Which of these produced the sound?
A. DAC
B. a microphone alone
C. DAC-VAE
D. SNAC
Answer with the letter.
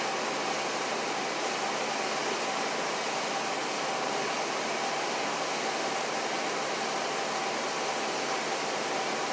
B